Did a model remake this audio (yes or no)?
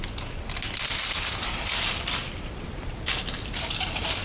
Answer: no